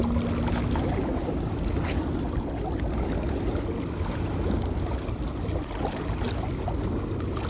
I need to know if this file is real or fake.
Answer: real